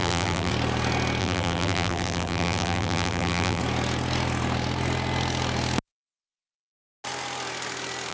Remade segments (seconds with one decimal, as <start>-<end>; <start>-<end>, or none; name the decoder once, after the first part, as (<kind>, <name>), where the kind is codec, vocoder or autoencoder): 0.0-0.5 (vocoder, BigVGAN v2); 1.2-3.6